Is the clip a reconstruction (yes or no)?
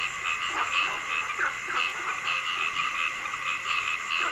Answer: yes